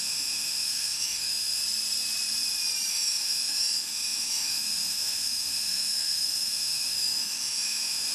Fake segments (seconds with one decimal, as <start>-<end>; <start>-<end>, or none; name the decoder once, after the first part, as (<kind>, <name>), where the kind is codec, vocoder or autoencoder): 0.0-1.6 (autoencoder, DAC-VAE); 2.9-8.1